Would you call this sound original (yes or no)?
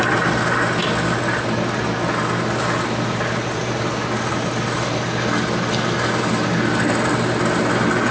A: yes